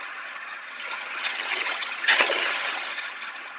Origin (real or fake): fake